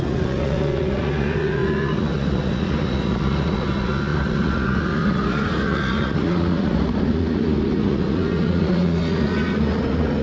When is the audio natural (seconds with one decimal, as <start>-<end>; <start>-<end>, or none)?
none